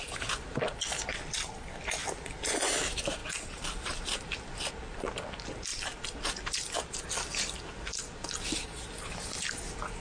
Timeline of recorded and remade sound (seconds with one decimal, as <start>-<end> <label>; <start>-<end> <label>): 0.0-2.0 recorded; 2.0-2.5 remade; 2.5-3.2 recorded; 3.2-4.7 remade; 4.7-5.7 recorded; 5.7-7.1 remade; 7.1-10.0 recorded